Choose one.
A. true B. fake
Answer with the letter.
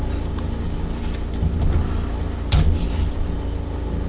A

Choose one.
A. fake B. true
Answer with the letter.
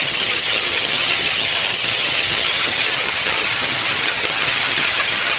A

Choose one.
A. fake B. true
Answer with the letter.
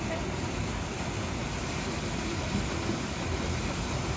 B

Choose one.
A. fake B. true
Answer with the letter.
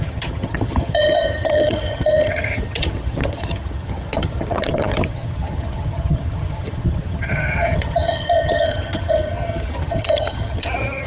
A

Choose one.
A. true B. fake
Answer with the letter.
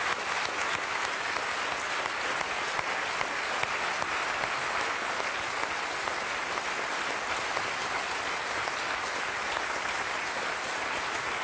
A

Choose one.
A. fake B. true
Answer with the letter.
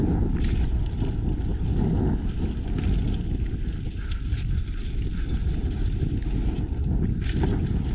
B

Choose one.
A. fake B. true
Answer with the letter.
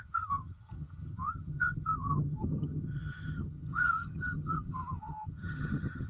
A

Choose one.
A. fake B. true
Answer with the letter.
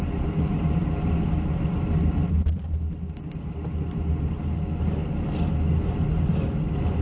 B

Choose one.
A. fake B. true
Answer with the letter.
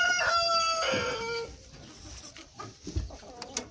B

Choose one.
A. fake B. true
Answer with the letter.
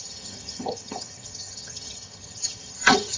A